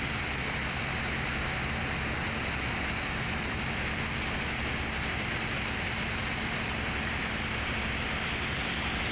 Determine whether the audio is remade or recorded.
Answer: recorded